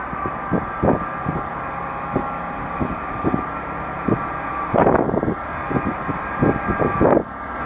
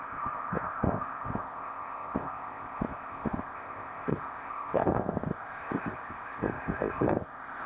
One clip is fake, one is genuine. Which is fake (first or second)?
second